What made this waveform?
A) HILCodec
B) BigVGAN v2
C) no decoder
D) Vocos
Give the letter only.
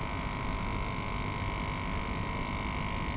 C